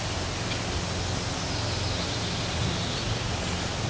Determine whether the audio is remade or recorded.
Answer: recorded